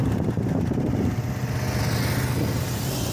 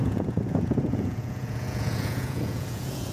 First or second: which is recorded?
first